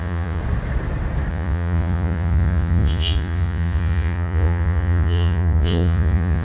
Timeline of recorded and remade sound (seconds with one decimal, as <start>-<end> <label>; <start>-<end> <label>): 0.0-0.4 remade; 0.4-1.3 recorded; 1.3-6.4 remade